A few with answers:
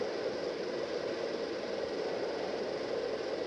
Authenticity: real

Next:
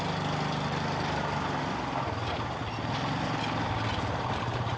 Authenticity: real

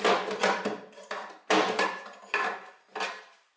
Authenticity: real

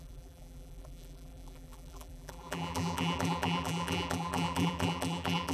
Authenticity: fake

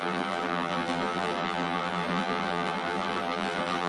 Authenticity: fake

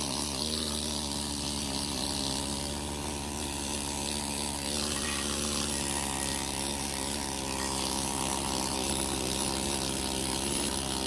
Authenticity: real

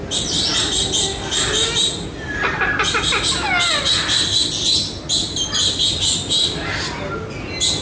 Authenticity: real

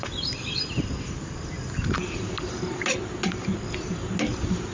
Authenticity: real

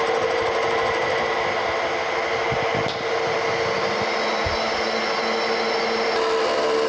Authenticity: real